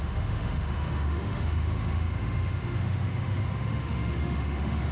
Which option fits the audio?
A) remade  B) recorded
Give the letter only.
A